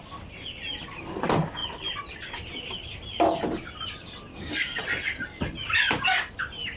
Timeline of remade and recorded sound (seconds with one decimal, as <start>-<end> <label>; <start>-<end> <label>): 0.0-4.3 recorded; 4.3-4.8 remade; 4.8-6.8 recorded

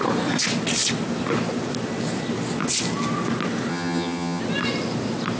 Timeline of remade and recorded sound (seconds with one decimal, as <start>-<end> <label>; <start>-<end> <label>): 0.0-3.7 recorded; 3.7-4.4 remade; 4.4-5.4 recorded